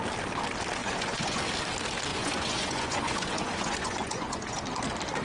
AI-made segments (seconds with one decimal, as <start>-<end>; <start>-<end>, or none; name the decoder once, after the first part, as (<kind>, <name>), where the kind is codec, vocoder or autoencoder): 0.8-1.4 (vocoder, Vocos); 2.1-4.6